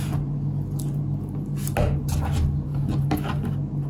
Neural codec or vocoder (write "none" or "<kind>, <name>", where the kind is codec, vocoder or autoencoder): none